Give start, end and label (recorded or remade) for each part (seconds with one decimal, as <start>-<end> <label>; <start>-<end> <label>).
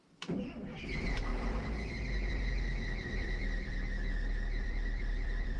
0.0-1.3 remade; 1.3-2.3 recorded; 2.3-5.6 remade